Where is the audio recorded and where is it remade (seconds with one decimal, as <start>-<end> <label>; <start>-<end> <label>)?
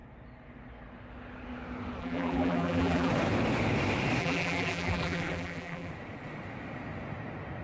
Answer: 0.0-2.0 recorded; 2.0-3.1 remade; 3.1-4.2 recorded; 4.2-5.9 remade; 5.9-7.6 recorded